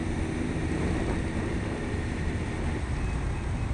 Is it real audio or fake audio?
real